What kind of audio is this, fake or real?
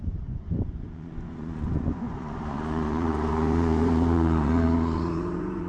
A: fake